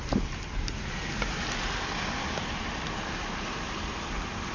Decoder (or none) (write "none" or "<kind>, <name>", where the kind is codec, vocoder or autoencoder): none